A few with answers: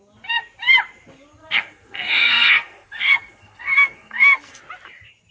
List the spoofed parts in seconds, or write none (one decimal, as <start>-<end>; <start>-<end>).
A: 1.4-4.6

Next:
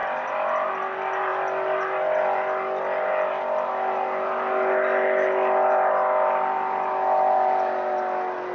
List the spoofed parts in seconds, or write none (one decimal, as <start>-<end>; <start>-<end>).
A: 0.0-0.7

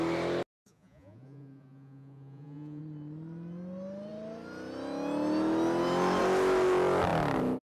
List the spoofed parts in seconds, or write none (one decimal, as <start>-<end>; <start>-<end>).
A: 0.6-2.8

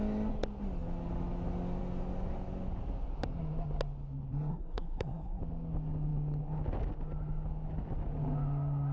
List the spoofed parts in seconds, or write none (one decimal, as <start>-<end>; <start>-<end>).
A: 4.5-5.4